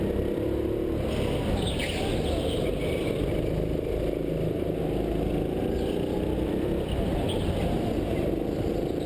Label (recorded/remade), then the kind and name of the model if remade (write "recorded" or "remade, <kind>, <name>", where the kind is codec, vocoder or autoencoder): recorded